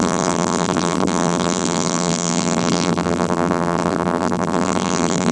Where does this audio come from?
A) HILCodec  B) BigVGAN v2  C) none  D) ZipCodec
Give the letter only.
B